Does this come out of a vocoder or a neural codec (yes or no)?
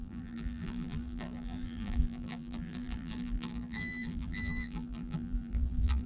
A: yes